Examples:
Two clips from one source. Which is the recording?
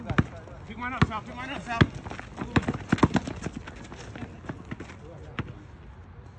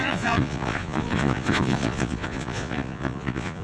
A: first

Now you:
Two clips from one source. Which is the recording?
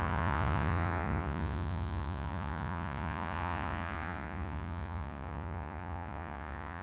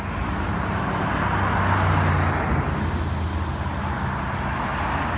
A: second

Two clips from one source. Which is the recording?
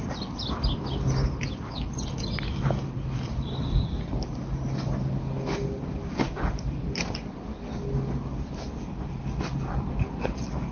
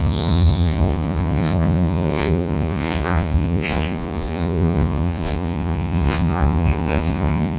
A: first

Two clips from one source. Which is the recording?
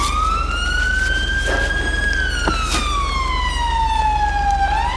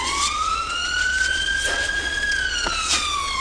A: first